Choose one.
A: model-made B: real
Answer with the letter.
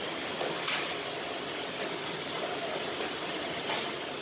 B